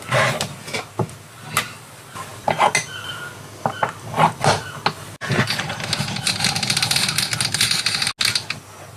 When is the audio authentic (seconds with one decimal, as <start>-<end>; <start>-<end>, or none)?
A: 0.0-9.0